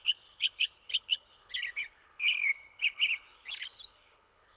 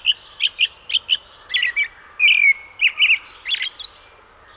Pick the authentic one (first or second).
second